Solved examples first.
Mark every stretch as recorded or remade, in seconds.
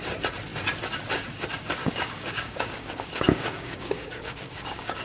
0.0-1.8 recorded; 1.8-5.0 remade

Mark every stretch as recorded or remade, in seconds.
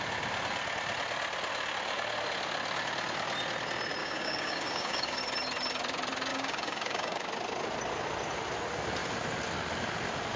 0.0-4.0 recorded; 4.0-5.2 remade; 5.2-6.3 recorded; 6.3-7.3 remade; 7.3-10.4 recorded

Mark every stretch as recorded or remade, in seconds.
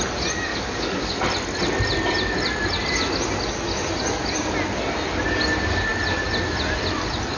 0.0-0.5 recorded; 0.5-1.2 remade; 1.2-7.4 recorded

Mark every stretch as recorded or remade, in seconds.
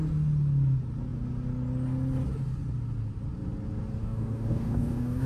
0.0-4.0 recorded; 4.0-5.3 remade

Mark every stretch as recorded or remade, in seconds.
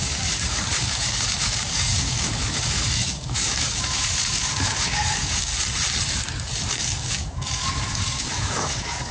0.0-5.5 remade; 5.5-6.7 recorded; 6.7-9.1 remade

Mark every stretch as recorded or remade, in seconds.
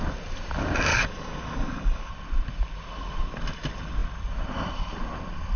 0.0-0.9 recorded; 0.9-2.1 remade; 2.1-5.6 recorded